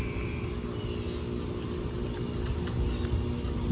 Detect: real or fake real